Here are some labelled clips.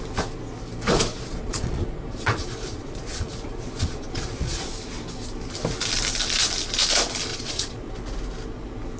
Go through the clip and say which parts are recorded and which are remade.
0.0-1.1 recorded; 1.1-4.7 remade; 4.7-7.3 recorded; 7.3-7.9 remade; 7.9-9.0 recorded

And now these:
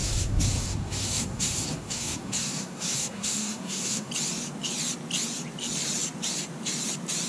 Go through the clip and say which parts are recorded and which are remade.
0.0-4.1 remade; 4.1-7.3 recorded